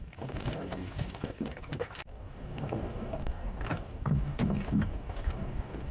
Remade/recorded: remade